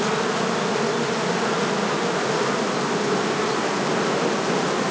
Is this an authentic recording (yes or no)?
yes